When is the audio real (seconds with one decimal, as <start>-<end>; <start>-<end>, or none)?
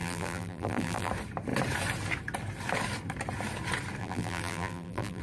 1.1-4.0